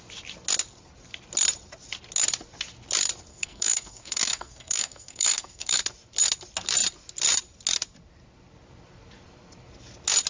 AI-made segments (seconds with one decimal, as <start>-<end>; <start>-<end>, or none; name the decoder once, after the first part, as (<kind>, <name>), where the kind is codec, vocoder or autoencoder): 3.3-5.8 (codec, SNAC)